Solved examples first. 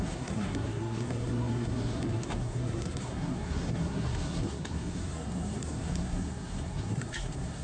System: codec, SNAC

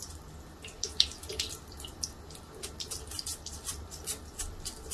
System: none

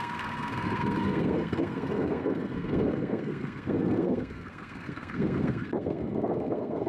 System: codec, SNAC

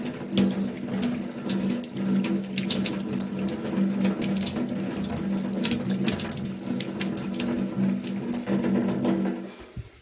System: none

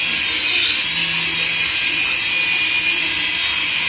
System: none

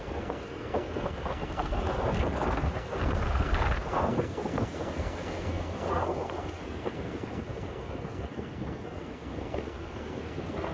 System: codec, SNAC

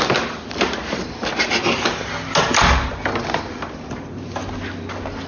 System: none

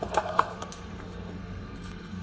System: codec, SNAC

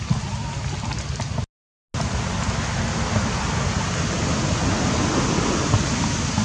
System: none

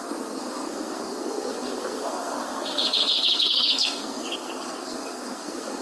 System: codec, SNAC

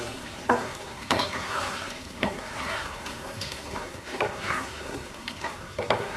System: codec, SNAC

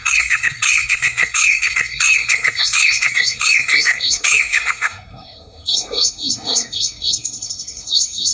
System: codec, SNAC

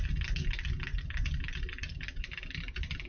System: none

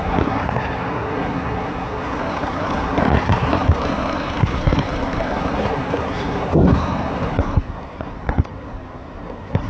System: codec, SNAC